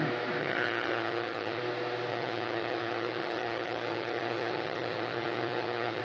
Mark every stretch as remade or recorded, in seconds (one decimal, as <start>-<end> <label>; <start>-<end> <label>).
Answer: 0.0-0.4 recorded; 0.4-1.6 remade; 1.6-2.1 recorded; 2.1-6.0 remade